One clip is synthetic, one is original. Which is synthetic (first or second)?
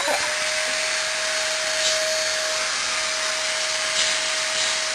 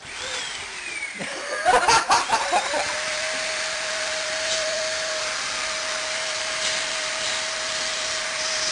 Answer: second